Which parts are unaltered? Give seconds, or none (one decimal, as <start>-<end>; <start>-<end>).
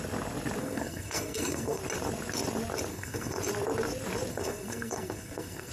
0.0-0.6; 1.8-2.9; 3.4-4.3